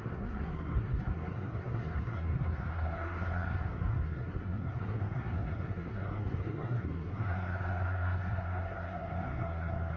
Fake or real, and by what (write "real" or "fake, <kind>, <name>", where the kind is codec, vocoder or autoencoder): fake, codec, SNAC